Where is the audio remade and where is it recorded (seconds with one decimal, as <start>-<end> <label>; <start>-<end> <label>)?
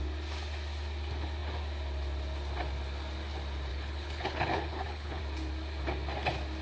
0.0-3.7 recorded; 3.7-5.2 remade; 5.2-6.6 recorded